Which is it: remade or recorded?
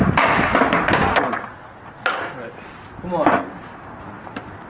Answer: recorded